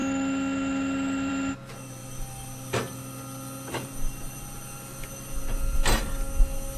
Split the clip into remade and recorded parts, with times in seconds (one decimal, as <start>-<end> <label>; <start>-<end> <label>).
0.0-6.8 recorded